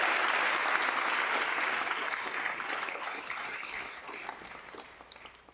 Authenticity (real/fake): real